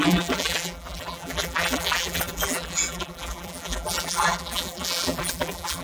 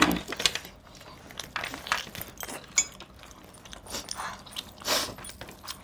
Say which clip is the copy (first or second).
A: first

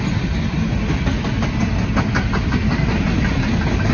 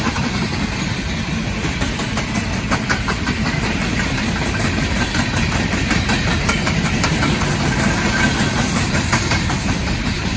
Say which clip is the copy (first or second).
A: second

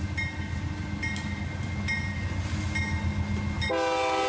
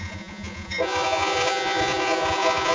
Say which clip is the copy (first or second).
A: second